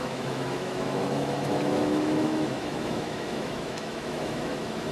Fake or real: fake